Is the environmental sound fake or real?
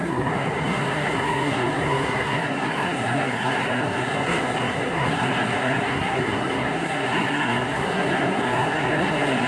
fake